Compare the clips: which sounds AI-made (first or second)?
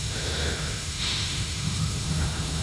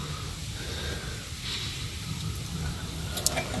first